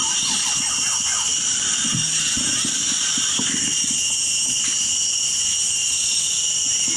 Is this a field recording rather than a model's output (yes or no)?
yes